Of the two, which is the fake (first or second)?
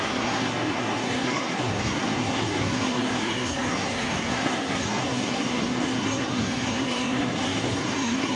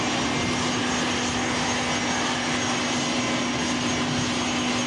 first